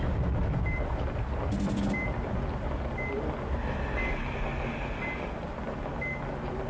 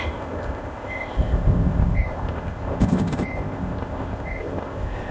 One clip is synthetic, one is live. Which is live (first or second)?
first